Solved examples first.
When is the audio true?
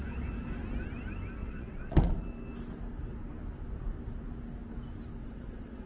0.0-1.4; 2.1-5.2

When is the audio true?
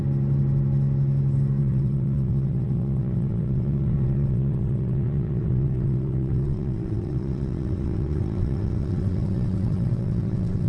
0.0-1.6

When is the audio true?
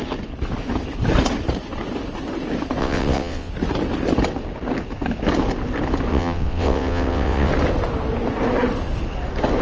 0.0-2.8; 3.5-6.1; 7.5-9.6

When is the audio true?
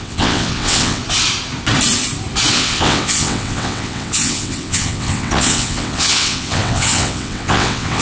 1.0-2.5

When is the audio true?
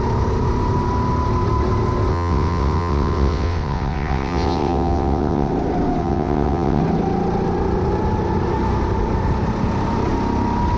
0.0-2.1; 5.5-6.0; 6.8-10.8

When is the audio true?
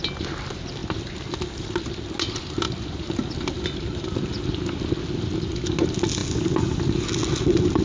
0.0-7.8